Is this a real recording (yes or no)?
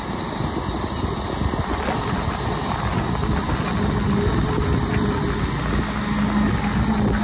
yes